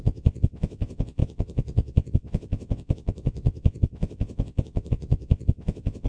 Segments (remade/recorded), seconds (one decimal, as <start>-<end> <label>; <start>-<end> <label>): 0.0-6.1 remade